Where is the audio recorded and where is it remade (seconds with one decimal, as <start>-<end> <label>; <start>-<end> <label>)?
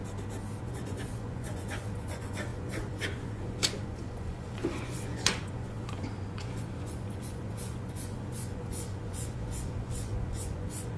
0.0-0.6 recorded; 0.6-11.0 remade